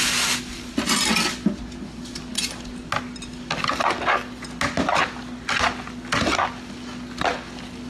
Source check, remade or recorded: recorded